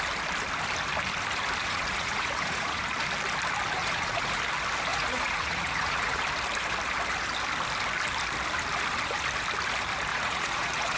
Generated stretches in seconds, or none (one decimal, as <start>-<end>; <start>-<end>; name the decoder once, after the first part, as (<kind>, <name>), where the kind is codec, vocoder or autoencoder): 1.6-2.8 (vocoder, Vocos); 3.8-4.4; 4.9-6.2; 10.1-11.0